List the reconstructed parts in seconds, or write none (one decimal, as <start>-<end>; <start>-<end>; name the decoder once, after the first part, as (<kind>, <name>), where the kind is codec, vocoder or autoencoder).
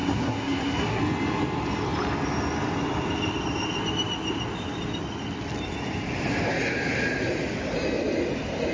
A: 0.0-1.0 (codec, SNAC)